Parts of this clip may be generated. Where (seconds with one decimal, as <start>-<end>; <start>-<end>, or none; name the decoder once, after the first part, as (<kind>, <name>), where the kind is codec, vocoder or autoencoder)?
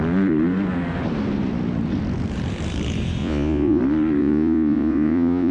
3.2-3.8 (vocoder, Vocos); 4.2-5.5